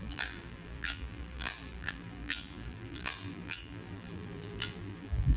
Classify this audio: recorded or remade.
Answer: remade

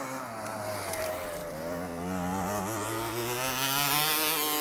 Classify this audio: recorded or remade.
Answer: recorded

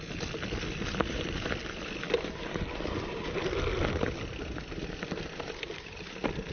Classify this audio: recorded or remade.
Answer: recorded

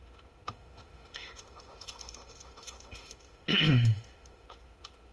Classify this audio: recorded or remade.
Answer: remade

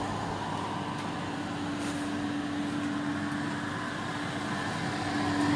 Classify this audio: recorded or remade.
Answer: recorded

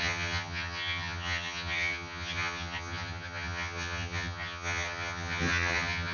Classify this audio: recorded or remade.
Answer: remade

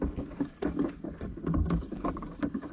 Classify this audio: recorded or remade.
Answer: remade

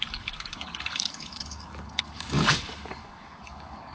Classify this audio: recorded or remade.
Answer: remade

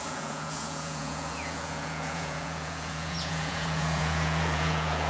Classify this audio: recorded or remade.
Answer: remade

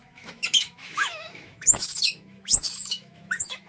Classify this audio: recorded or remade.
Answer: remade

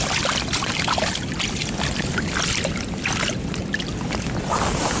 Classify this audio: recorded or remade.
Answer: recorded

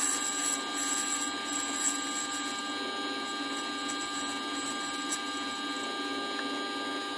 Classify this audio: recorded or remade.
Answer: recorded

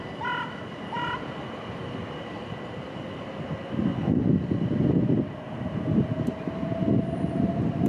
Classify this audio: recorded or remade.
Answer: recorded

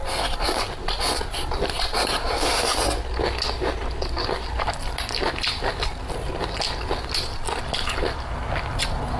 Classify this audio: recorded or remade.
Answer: recorded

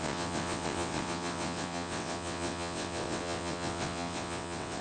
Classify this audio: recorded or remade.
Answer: remade